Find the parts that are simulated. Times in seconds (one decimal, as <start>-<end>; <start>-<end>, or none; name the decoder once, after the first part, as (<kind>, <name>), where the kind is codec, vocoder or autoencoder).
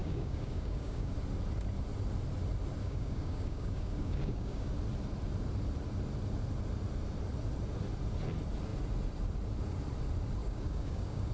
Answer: 0.0-1.1 (codec, DAC); 2.8-4.7; 10.4-11.3